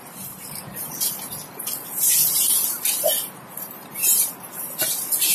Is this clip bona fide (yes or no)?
yes